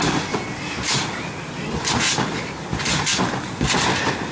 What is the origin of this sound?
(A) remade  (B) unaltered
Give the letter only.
B